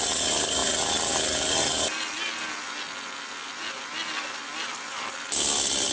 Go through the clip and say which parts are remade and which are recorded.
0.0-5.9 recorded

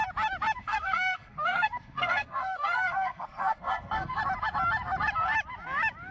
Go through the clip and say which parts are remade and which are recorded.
0.0-0.6 recorded; 0.6-4.2 remade; 4.2-6.1 recorded

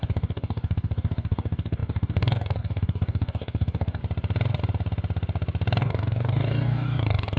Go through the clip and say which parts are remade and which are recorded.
0.0-4.0 remade; 4.0-5.8 recorded; 5.8-7.4 remade

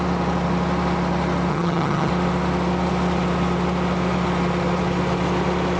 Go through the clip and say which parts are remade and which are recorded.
0.0-1.5 recorded; 1.5-2.1 remade; 2.1-5.8 recorded

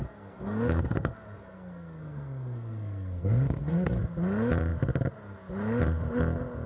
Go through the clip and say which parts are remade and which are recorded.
0.0-4.0 remade; 4.0-6.7 recorded